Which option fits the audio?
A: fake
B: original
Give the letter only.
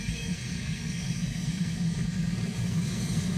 A